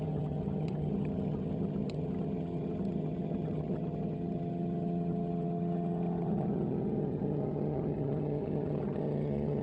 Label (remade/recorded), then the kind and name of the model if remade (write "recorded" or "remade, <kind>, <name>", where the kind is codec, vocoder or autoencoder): remade, vocoder, HiFi-GAN